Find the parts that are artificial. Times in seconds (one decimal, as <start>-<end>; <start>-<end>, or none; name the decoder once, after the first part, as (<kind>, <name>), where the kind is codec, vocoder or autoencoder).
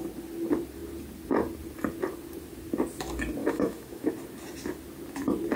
3.4-4.1 (autoencoder, DAC-VAE)